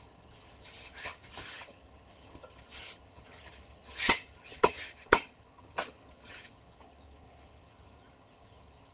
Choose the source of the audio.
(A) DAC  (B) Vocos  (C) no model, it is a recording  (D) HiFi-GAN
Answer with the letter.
D